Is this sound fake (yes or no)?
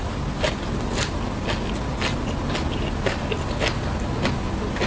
no